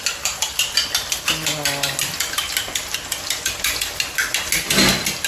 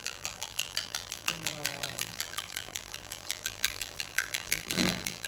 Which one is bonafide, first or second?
first